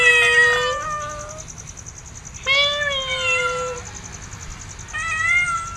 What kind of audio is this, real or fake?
real